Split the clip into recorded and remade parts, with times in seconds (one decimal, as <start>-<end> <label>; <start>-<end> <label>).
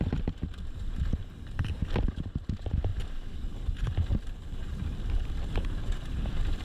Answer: 0.0-2.9 recorded; 2.9-5.7 remade; 5.7-6.6 recorded